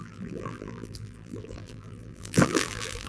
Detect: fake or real fake